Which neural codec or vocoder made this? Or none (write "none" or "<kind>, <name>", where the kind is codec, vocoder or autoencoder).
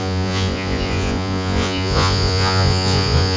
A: vocoder, Vocos